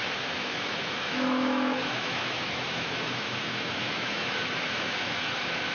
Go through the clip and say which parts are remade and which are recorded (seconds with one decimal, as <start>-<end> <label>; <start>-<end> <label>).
0.0-5.7 remade